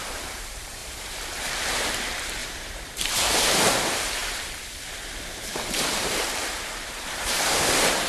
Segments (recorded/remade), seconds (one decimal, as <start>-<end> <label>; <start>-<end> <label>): 0.0-8.1 remade